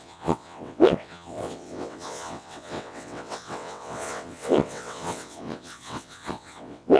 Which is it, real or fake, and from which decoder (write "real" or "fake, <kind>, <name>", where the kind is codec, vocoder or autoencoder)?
fake, vocoder, WaveNeXt